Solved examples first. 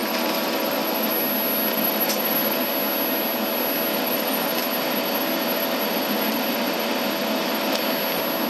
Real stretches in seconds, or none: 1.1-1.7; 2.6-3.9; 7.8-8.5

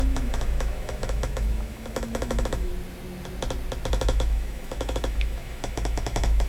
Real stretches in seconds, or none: 2.7-3.9

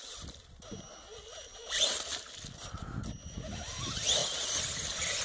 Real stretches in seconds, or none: 0.0-5.2

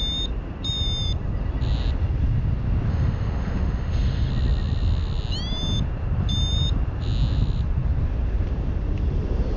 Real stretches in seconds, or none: 0.0-2.9; 4.3-9.6

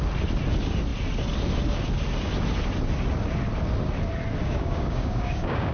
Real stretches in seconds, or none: 0.0-4.4

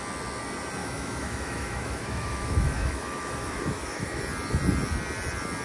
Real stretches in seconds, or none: 0.0-0.8; 4.2-5.6